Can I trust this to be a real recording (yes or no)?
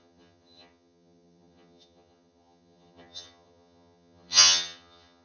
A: no